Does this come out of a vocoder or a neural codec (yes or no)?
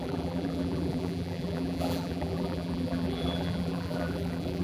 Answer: yes